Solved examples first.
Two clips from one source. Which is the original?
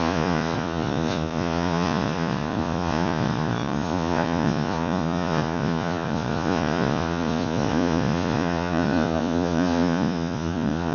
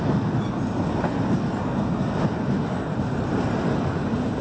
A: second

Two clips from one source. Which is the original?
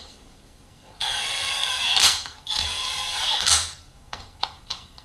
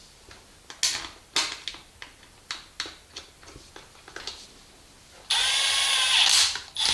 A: second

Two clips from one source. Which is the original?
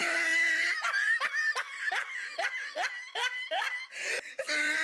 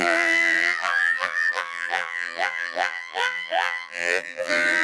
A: first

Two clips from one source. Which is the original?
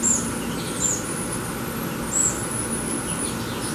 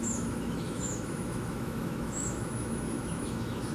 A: first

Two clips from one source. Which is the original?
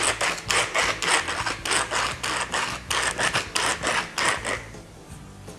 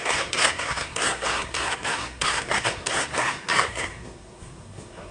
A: first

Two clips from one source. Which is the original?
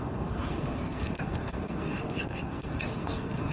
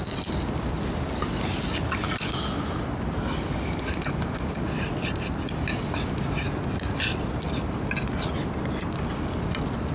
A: second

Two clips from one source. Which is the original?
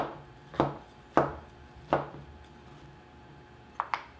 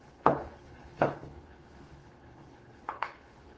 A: first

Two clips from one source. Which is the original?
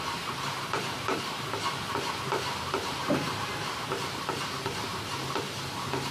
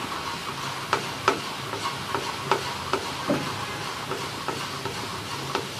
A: second